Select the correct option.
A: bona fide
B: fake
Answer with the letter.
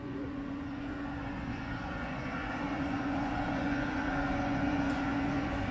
B